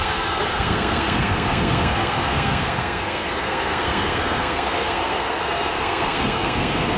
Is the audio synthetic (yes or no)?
yes